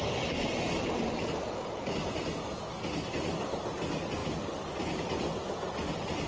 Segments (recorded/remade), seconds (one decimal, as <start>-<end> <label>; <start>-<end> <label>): 0.0-6.3 remade